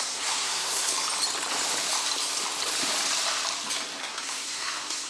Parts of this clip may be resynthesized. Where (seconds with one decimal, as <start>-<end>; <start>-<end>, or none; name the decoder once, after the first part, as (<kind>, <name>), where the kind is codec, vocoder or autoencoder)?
0.0-0.9 (codec, SNAC); 4.0-5.1